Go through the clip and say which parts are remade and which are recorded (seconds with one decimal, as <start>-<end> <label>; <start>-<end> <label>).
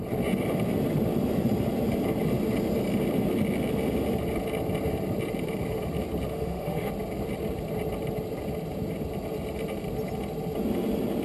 0.0-6.3 recorded; 6.3-6.9 remade; 6.9-11.2 recorded